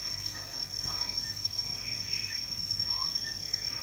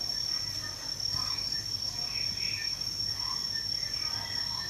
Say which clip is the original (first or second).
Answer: second